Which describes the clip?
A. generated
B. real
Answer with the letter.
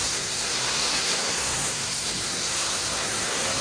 A